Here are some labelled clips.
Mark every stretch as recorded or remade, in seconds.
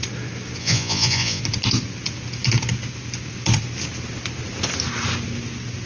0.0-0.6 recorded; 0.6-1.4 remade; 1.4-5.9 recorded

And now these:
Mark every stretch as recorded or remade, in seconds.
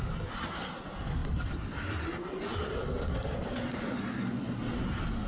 0.0-5.3 recorded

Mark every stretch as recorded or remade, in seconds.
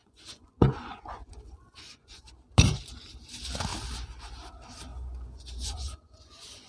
0.0-2.2 remade; 2.2-4.9 recorded; 4.9-6.7 remade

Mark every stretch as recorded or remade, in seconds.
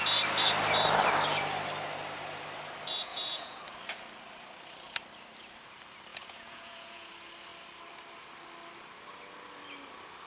0.0-3.1 recorded; 3.1-3.6 remade; 3.6-6.1 recorded; 6.1-7.1 remade; 7.1-10.3 recorded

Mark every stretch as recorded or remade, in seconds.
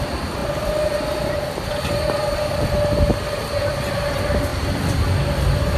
0.0-5.8 recorded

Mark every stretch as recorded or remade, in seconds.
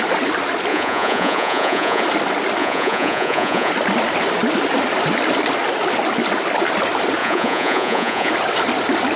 0.0-0.7 recorded; 0.7-2.0 remade; 2.0-2.6 recorded; 2.6-3.7 remade; 3.7-7.2 recorded; 7.2-8.3 remade; 8.3-9.2 recorded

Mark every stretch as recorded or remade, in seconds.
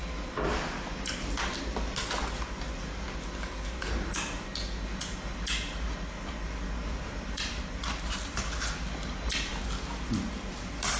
0.0-11.0 recorded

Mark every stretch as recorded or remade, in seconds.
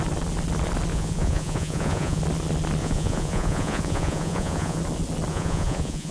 0.0-0.9 recorded; 0.9-2.2 remade; 2.2-2.8 recorded; 2.8-4.8 remade; 4.8-5.3 recorded; 5.3-6.1 remade